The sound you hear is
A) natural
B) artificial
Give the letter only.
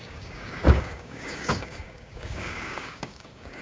B